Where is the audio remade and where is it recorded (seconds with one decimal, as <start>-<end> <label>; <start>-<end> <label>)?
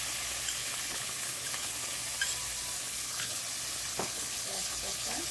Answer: 0.0-0.6 recorded; 0.6-1.7 remade; 1.7-2.8 recorded; 2.8-3.4 remade; 3.4-3.9 recorded; 3.9-5.3 remade